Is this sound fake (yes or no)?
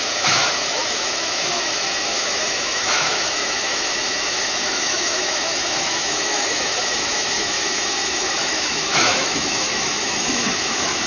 yes